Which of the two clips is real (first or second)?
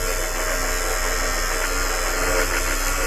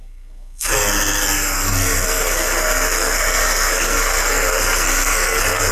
first